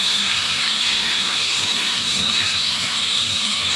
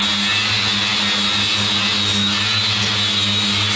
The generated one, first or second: first